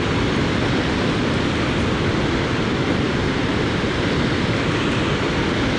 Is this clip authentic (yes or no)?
yes